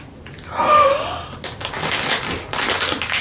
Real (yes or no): yes